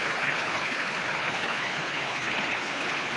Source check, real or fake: fake